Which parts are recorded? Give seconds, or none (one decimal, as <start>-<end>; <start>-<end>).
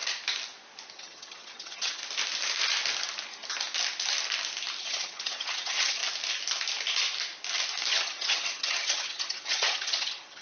0.0-0.9; 2.0-4.8; 6.0-7.9